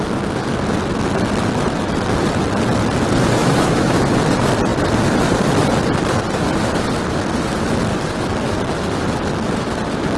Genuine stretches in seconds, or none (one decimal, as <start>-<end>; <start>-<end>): 0.0-3.4; 4.0-10.2